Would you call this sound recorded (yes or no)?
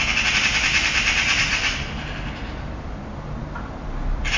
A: yes